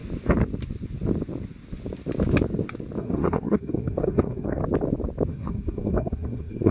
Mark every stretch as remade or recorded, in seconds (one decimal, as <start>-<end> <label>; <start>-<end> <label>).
0.0-3.0 recorded; 3.0-4.6 remade; 4.6-5.3 recorded; 5.3-6.7 remade